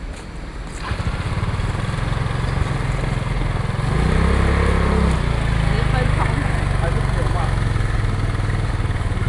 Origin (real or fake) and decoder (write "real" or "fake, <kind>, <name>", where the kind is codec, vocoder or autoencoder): real